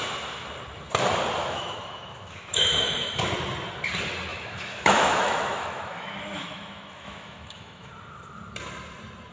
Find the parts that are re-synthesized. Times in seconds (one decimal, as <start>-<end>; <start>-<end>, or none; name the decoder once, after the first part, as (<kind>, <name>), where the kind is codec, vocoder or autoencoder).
1.4-3.3 (autoencoder, DAC-VAE); 4.3-7.9